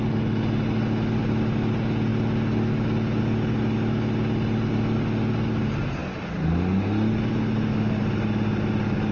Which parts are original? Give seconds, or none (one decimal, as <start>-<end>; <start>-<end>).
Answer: 0.0-9.1